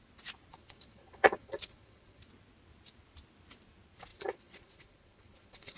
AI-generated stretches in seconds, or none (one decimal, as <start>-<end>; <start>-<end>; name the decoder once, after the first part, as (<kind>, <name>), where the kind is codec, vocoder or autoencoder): 0.5-2.2 (vocoder, Vocos); 4.1-5.8